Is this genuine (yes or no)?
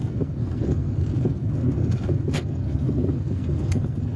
no